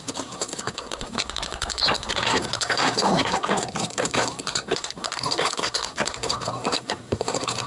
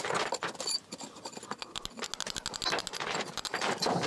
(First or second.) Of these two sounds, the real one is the second